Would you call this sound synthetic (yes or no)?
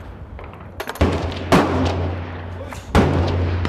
no